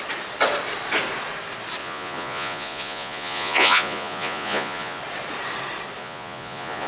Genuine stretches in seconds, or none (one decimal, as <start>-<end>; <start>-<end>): 0.0-1.8; 5.0-6.0